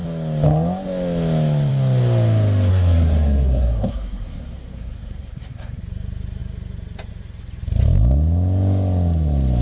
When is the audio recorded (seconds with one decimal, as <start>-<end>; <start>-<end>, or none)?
0.0-2.7; 5.8-9.6